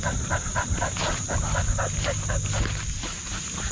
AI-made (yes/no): no